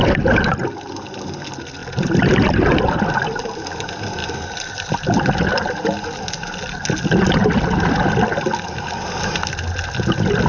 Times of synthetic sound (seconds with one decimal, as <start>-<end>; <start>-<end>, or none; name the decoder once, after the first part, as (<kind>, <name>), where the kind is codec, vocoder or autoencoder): none